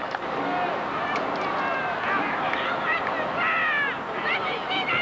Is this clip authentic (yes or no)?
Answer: yes